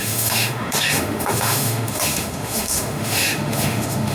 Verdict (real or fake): fake